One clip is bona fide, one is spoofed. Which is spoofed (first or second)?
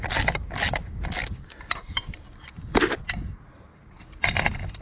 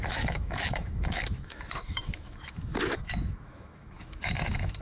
second